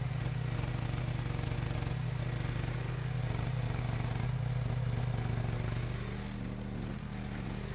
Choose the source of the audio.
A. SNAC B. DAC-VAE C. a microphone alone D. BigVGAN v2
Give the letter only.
C